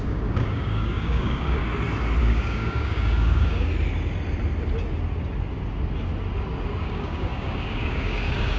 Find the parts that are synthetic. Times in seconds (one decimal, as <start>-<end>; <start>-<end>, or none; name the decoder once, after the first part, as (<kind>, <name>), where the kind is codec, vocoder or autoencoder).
0.0-1.6 (codec, DAC); 2.2-3.7; 6.8-8.6